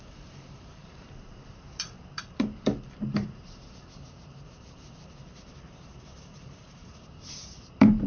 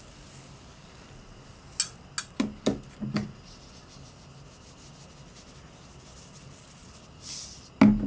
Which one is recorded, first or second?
second